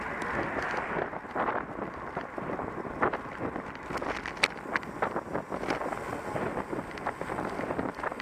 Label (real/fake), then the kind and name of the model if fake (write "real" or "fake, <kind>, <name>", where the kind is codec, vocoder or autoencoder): real